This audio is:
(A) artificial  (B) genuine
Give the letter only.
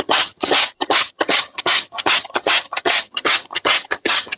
A